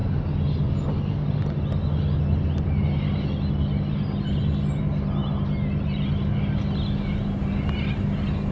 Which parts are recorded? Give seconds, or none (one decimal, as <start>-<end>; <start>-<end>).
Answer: 0.0-8.5